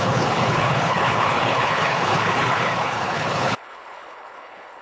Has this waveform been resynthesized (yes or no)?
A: yes